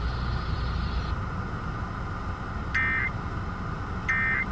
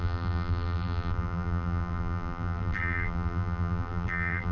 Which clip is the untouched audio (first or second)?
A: first